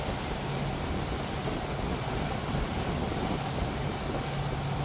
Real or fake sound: real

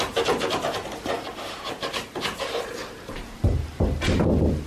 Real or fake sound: real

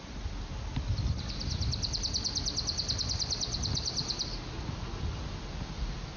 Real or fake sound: real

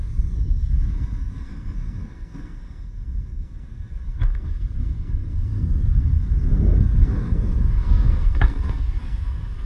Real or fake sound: fake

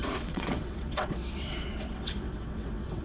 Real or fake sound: fake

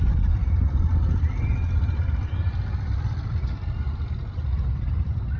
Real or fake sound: fake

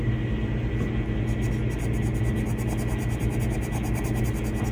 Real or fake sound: real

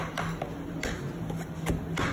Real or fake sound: real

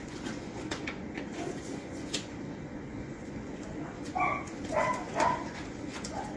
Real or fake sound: fake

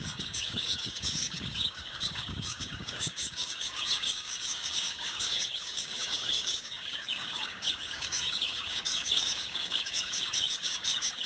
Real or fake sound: fake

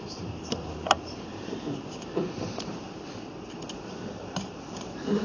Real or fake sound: fake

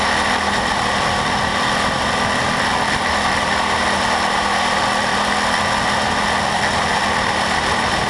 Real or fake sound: real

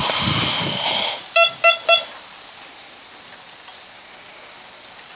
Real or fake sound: real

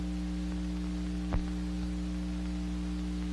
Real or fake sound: real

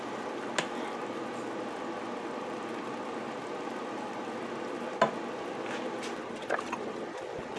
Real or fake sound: real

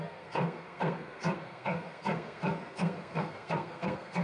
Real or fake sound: fake